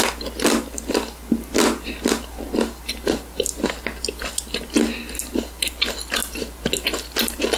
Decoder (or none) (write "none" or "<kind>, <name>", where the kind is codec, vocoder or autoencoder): none